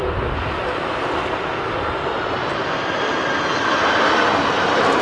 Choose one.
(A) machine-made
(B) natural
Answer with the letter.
B